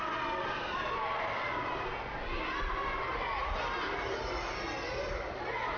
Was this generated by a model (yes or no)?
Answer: no